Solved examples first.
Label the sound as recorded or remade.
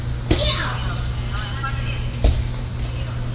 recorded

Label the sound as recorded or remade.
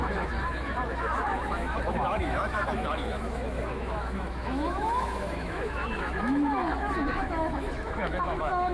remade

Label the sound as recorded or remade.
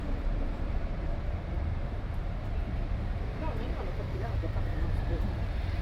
remade